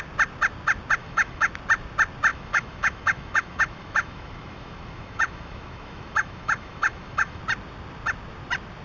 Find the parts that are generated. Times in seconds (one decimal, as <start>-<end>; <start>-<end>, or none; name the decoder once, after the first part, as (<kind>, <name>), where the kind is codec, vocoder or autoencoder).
1.0-1.5 (autoencoder, DAC-VAE); 2.3-7.4